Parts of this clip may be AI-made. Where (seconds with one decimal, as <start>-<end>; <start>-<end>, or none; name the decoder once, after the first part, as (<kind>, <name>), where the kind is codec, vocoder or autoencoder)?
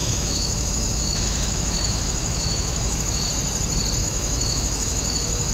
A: 0.0-3.3 (autoencoder, DAC-VAE); 4.0-5.5